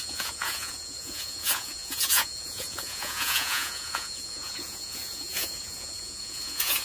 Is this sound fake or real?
fake